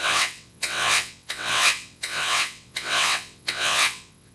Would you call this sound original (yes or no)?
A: no